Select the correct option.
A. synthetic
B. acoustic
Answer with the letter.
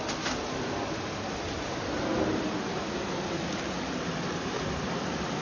B